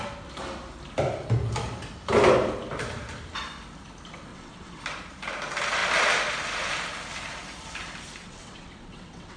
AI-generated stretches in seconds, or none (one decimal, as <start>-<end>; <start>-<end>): 4.3-4.8; 8.2-9.4